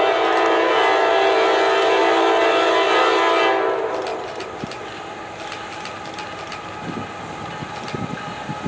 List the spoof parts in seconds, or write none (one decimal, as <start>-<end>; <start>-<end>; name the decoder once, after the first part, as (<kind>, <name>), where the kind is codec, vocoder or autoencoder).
4.1-4.6 (vocoder, BigVGAN v2)